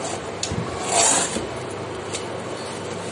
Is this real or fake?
real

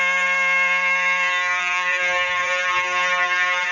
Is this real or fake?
fake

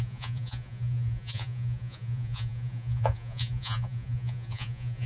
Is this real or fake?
fake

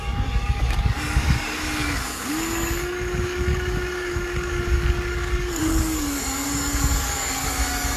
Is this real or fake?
fake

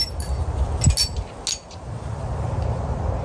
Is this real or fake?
real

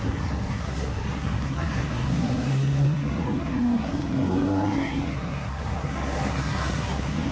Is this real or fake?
fake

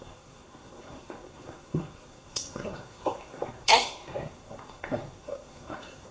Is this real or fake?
fake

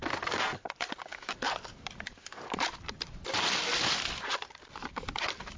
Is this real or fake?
fake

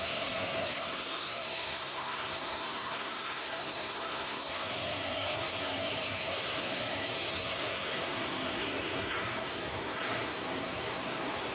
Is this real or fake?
fake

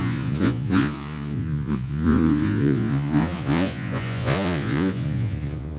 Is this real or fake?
fake